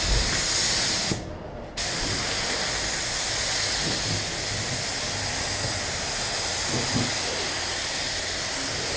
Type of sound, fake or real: real